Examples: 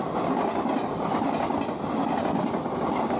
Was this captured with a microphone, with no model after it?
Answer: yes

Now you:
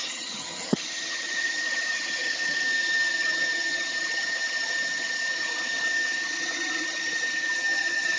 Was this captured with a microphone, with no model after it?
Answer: no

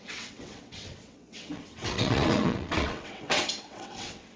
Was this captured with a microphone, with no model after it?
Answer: no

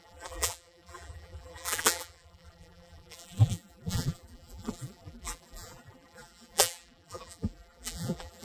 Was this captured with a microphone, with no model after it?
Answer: no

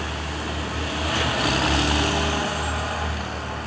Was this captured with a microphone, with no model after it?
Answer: yes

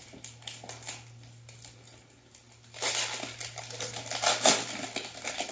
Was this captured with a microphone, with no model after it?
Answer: yes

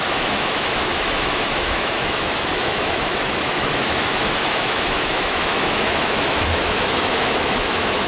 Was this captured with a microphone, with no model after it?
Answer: no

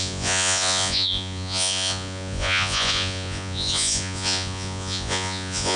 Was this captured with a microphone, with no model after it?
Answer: no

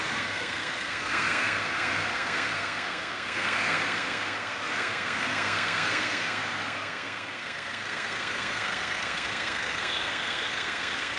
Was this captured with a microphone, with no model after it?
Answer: no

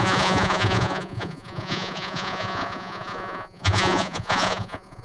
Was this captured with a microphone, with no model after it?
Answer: no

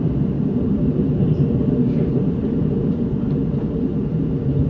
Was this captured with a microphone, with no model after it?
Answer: no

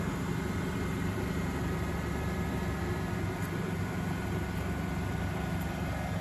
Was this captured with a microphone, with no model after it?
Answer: yes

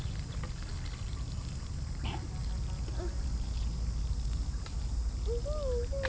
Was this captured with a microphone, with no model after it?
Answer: yes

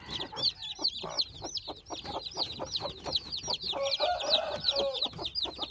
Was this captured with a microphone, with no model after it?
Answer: yes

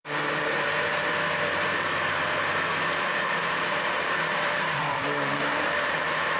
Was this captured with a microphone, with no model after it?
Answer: no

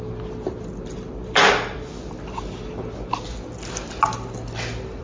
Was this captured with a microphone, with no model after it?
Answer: yes